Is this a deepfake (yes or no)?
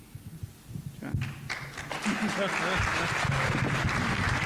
no